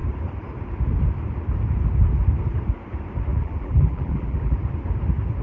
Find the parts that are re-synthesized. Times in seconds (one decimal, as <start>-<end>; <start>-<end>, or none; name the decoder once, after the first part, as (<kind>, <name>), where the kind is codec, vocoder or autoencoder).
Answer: 3.3-4.6 (vocoder, BigVGAN v2)